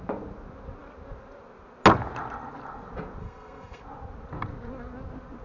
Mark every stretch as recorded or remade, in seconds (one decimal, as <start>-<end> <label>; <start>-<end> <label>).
0.0-3.2 recorded; 3.2-3.8 remade; 3.8-5.4 recorded